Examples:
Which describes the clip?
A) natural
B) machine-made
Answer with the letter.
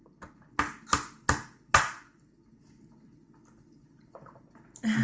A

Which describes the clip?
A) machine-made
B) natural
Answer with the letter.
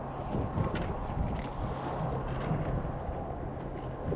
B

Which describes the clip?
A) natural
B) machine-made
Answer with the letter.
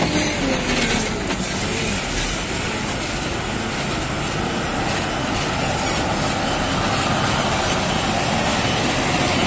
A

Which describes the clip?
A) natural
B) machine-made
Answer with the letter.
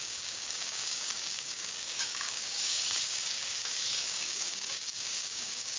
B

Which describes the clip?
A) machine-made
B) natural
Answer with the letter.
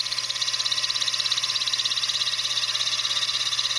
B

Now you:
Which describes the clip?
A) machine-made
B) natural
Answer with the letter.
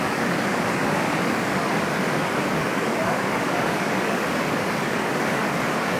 A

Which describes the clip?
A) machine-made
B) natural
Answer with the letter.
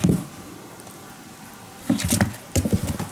B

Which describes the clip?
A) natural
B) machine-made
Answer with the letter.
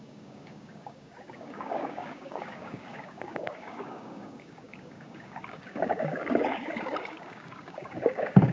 B